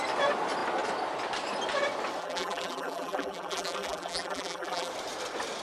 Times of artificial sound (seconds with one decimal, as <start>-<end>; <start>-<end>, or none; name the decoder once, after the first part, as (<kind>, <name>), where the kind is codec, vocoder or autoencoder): 2.2-4.9 (vocoder, BigVGAN v2)